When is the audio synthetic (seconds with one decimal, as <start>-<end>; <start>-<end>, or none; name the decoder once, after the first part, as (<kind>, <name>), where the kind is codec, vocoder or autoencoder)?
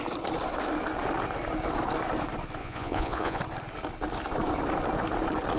2.6-3.4 (vocoder, Vocos)